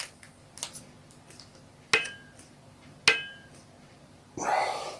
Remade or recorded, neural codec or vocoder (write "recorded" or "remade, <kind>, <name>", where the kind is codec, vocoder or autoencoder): recorded